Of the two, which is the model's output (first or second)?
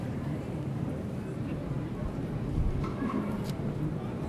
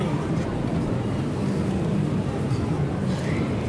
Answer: first